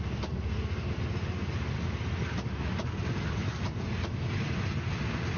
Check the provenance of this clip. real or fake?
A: real